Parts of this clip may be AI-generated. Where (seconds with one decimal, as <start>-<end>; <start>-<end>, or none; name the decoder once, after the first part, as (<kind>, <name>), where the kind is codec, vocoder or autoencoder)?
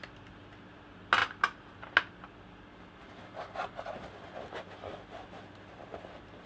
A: none